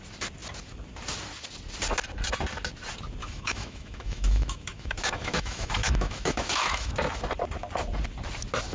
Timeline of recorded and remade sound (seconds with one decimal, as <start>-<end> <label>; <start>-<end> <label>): 0.0-3.2 recorded; 3.2-6.9 remade; 6.9-8.7 recorded

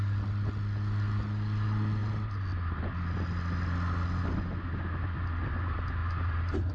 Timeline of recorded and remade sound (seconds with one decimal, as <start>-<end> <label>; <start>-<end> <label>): 0.0-6.7 recorded